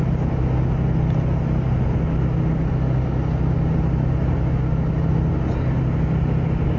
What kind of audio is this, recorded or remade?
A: recorded